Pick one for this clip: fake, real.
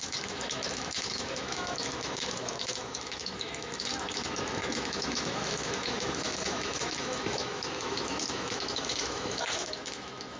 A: fake